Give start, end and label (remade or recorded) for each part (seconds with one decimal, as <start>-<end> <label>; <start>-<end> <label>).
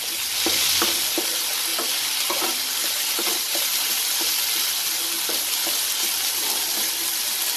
0.0-7.6 recorded